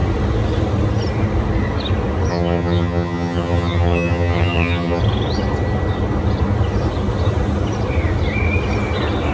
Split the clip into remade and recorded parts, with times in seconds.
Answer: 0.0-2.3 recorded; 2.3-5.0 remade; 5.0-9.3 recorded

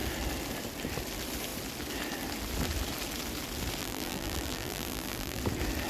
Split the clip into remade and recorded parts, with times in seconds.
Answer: 0.0-3.8 recorded; 3.8-5.4 remade; 5.4-5.9 recorded